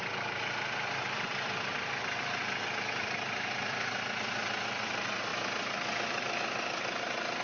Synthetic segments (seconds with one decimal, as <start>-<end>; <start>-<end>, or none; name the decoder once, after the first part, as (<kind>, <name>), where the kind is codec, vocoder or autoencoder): none